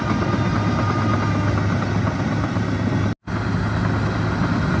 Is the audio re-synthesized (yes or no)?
no